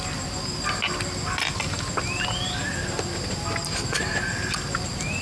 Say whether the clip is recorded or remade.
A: recorded